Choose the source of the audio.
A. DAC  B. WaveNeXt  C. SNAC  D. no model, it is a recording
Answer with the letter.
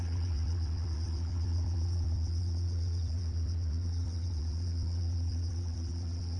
B